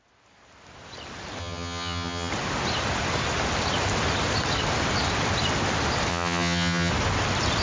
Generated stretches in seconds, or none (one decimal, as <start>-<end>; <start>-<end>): 1.4-2.3; 6.1-6.9